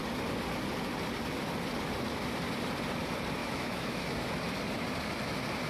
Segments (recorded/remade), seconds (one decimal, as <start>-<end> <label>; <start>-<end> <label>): 0.0-3.4 recorded; 3.4-4.4 remade; 4.4-5.7 recorded